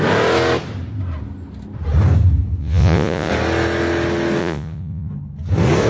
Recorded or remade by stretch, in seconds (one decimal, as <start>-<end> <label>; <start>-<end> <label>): 0.0-2.6 recorded; 2.6-3.3 remade; 3.3-4.4 recorded; 4.4-5.1 remade; 5.1-5.9 recorded

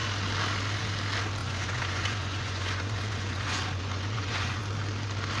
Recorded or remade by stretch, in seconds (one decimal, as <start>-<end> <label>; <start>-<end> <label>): 0.0-1.4 recorded; 1.4-4.6 remade; 4.6-5.4 recorded

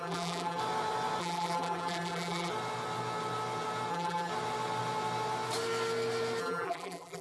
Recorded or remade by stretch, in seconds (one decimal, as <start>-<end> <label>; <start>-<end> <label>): 0.0-0.6 remade; 0.6-1.2 recorded; 1.2-2.5 remade; 2.5-3.9 recorded; 3.9-4.3 remade; 4.3-6.4 recorded; 6.4-7.2 remade

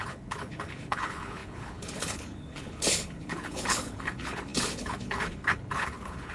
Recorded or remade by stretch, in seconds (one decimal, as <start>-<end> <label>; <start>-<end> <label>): 0.0-6.3 remade

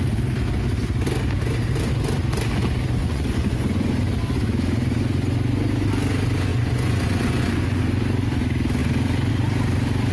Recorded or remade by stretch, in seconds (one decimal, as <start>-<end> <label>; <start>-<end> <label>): 0.0-3.0 recorded; 3.0-3.9 remade; 3.9-6.5 recorded; 6.5-7.8 remade; 7.8-10.1 recorded

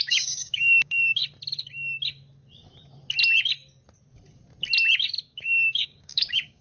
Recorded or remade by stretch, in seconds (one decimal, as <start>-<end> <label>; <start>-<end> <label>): 0.0-1.2 remade; 1.2-5.2 recorded; 5.2-6.6 remade

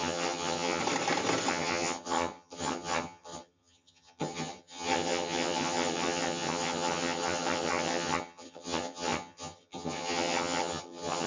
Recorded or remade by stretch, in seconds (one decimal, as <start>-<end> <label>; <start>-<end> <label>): 0.0-0.8 remade; 0.8-1.5 recorded; 1.5-11.3 remade

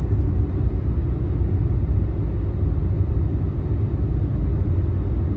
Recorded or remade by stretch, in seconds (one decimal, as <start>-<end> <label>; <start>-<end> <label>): 0.0-5.4 recorded